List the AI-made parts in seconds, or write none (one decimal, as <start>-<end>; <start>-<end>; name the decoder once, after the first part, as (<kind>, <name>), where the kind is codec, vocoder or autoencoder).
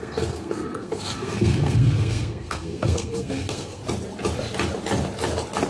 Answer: 0.0-3.8 (codec, SNAC)